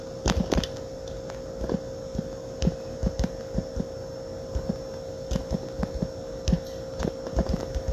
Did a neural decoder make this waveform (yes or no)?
no